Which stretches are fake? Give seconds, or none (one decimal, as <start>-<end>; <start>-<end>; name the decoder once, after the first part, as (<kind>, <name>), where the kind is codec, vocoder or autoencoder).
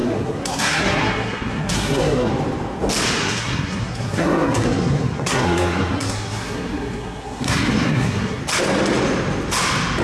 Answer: 0.0-2.3 (codec, SNAC); 3.2-8.4